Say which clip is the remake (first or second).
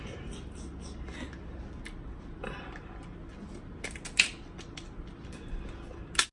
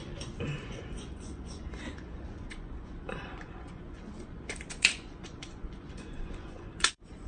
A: second